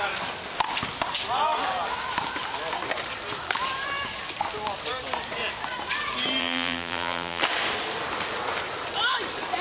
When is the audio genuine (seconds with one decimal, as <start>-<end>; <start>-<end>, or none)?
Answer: 0.0-6.4; 7.4-9.6